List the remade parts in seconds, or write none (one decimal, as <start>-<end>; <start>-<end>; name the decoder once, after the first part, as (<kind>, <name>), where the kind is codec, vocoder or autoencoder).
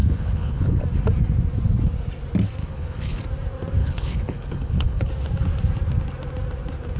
0.0-0.8 (codec, HILCodec); 2.6-3.2; 3.8-5.1